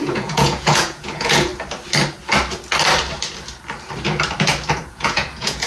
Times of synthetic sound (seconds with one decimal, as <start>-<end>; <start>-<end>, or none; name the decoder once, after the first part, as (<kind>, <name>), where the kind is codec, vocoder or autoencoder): 0.0-1.5 (vocoder, Vocos); 4.8-5.7